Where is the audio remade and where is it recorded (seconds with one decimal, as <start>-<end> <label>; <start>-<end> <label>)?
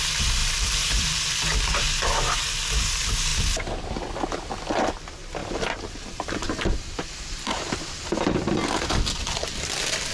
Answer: 0.0-0.4 recorded; 0.4-1.3 remade; 1.3-5.4 recorded; 5.4-8.1 remade; 8.1-10.1 recorded